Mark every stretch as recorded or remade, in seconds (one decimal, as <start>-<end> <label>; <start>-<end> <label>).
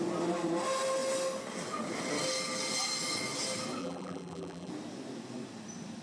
0.0-3.8 recorded; 3.8-4.7 remade; 4.7-6.0 recorded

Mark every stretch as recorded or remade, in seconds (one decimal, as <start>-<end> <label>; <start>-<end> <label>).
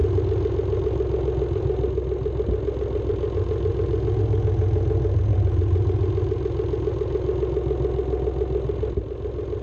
0.0-9.6 recorded